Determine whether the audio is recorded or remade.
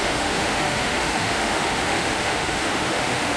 remade